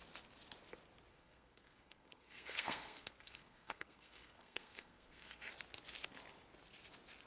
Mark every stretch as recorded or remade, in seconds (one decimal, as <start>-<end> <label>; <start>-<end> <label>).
0.0-1.1 recorded; 1.1-5.5 remade; 5.5-7.3 recorded